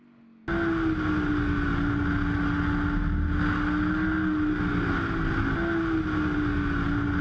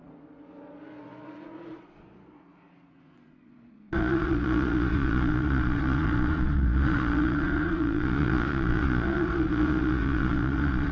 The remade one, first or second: second